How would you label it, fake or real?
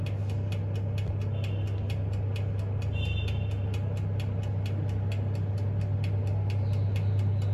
real